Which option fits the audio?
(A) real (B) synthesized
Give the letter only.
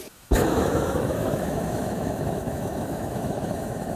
B